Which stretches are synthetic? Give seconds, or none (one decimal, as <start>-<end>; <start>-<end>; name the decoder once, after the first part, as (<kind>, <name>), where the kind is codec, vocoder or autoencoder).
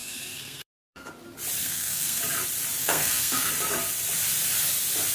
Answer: 0.0-1.1 (codec, SNAC); 1.6-2.2; 2.8-3.5